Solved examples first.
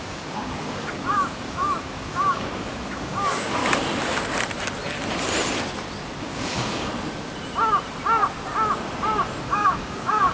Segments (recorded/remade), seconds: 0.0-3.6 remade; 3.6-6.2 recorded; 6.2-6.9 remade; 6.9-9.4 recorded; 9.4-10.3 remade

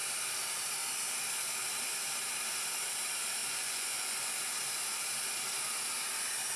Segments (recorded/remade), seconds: 0.0-3.4 recorded; 3.4-4.3 remade; 4.3-6.6 recorded

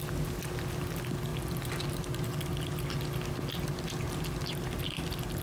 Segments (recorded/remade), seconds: 0.0-5.4 recorded

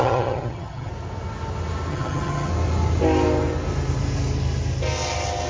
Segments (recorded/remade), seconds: 0.0-0.9 remade; 0.9-1.9 recorded; 1.9-2.5 remade; 2.5-5.5 recorded

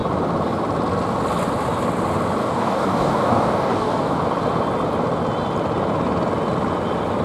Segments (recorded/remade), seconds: 0.0-2.4 recorded; 2.4-4.2 remade; 4.2-7.2 recorded

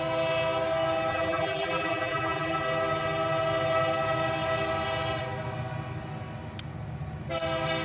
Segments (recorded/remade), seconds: 0.0-1.1 recorded; 1.1-2.6 remade; 2.6-7.8 recorded